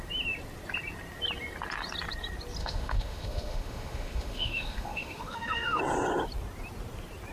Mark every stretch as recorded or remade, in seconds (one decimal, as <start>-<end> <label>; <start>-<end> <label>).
0.0-2.6 recorded; 2.6-5.8 remade; 5.8-7.3 recorded